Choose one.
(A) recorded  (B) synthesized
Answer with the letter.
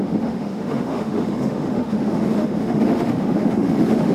B